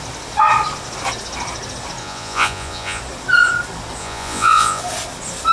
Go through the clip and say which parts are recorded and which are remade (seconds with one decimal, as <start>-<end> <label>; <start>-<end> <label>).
0.0-2.0 recorded; 2.0-3.0 remade; 3.0-4.0 recorded; 4.0-4.8 remade; 4.8-5.5 recorded